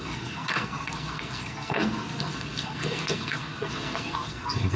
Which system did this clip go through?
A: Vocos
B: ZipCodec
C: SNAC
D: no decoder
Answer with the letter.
C